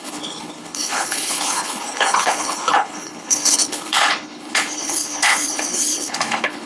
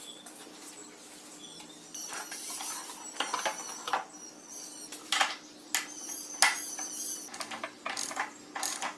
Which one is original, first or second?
second